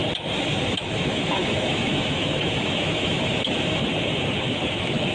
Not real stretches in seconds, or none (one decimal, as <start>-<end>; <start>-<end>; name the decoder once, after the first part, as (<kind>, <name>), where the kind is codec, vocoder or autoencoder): 0.6-3.8 (autoencoder, DAC-VAE); 4.5-5.1